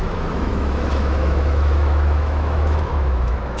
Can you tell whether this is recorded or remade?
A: remade